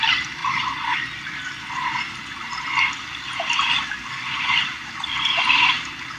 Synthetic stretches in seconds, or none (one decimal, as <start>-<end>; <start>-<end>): none

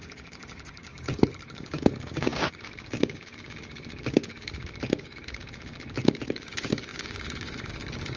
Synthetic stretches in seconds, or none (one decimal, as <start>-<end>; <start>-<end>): 0.0-8.2

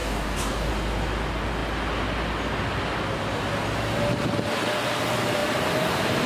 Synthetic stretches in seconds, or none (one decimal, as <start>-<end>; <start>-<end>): 0.0-0.7

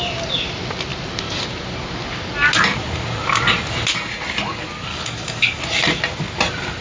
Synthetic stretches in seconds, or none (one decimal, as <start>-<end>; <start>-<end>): 4.9-5.6

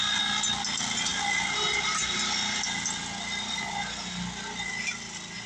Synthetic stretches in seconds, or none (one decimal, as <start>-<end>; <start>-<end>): none

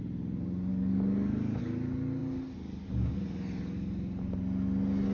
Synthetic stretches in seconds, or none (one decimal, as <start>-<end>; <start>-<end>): 0.7-1.6

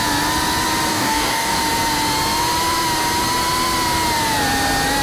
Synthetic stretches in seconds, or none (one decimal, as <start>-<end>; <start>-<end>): 0.9-1.6

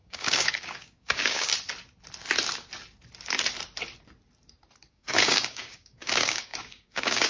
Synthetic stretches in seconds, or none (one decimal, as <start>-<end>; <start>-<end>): 0.0-1.5; 4.9-7.3